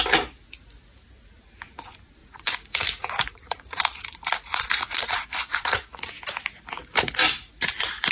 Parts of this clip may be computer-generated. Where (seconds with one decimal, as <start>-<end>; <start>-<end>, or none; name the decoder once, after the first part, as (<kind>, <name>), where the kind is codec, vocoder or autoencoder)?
2.2-6.1 (vocoder, Vocos)